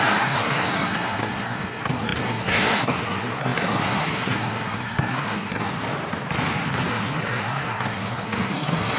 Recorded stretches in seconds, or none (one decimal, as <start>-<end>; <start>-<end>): 5.7-6.9